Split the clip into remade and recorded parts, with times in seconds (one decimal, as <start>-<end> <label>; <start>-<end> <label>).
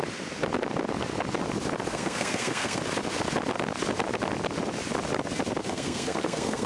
0.0-1.9 recorded; 1.9-2.8 remade; 2.8-5.6 recorded; 5.6-6.7 remade